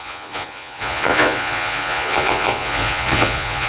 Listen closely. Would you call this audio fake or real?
fake